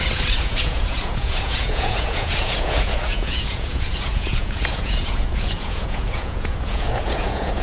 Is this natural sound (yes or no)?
no